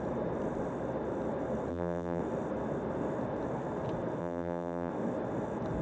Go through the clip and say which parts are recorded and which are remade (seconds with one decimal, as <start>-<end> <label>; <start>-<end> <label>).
0.0-1.7 recorded; 1.7-2.2 remade; 2.2-4.2 recorded; 4.2-4.9 remade; 4.9-5.8 recorded